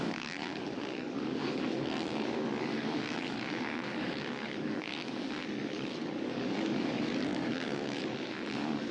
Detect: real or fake fake